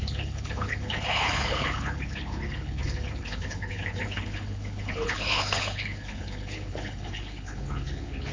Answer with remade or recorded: remade